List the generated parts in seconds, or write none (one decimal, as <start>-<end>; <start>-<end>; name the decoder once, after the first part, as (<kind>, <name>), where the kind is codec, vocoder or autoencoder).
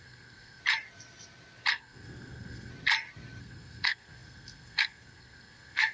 0.0-0.6 (codec, SNAC); 1.7-2.7; 3.4-5.9